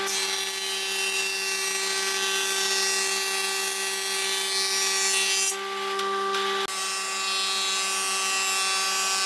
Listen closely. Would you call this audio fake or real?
real